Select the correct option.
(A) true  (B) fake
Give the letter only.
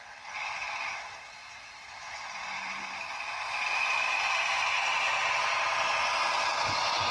B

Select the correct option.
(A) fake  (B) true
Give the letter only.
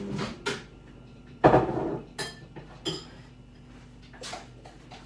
B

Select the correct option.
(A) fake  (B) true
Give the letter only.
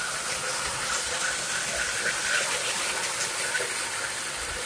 A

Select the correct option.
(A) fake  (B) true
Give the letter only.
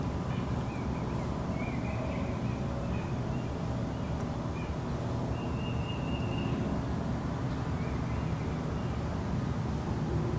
B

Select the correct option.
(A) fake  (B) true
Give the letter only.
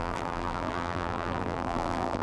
A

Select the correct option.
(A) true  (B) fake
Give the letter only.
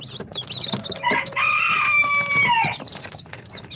A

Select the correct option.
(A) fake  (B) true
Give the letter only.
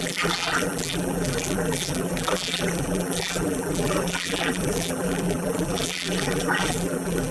A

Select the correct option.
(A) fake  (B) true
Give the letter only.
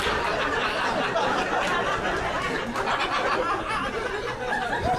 B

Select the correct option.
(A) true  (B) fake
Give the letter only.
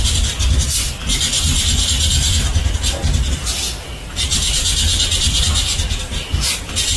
A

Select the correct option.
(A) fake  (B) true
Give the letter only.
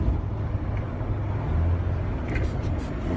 B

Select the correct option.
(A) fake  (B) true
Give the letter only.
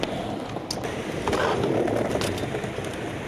A